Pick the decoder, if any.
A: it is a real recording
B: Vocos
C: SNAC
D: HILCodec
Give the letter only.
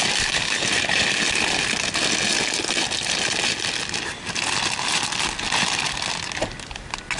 A